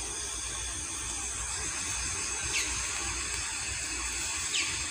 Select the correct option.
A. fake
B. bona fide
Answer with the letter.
B